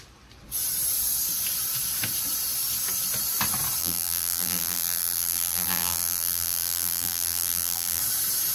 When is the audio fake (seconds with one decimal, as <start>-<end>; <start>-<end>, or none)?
3.8-8.0